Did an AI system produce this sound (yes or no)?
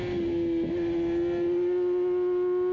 no